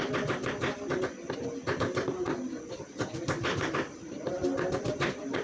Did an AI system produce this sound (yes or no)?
no